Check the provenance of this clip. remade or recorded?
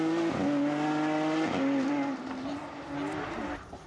recorded